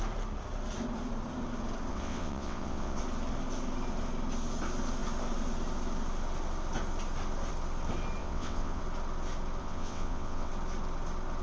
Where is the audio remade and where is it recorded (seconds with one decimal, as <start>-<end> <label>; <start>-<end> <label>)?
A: 0.0-1.9 recorded; 1.9-3.0 remade; 3.0-8.2 recorded; 8.2-8.8 remade; 8.8-9.6 recorded; 9.6-10.5 remade; 10.5-11.4 recorded